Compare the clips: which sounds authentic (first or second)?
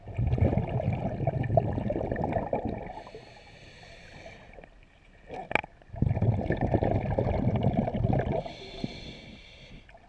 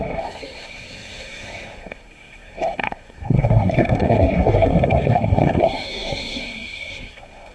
first